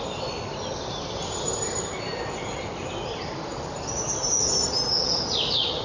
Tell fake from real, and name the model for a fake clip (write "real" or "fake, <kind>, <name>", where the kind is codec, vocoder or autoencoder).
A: real